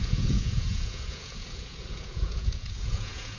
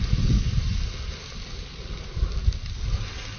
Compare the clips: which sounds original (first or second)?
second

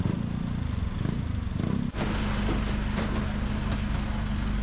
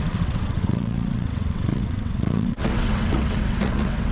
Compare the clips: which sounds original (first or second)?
first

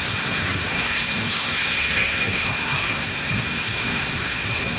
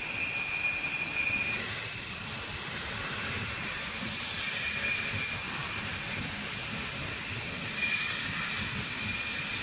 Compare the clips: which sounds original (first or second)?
second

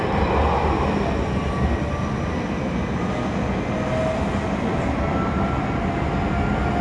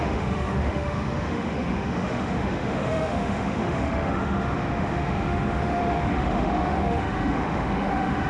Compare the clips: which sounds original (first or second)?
first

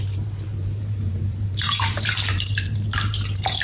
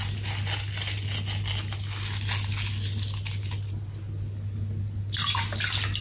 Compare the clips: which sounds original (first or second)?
second